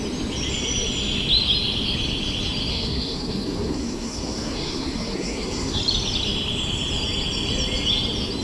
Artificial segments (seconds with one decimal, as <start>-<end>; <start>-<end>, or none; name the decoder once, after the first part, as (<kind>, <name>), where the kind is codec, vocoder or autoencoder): 2.7-5.8 (codec, SNAC)